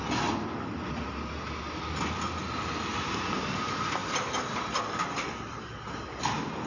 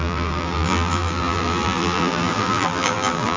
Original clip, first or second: first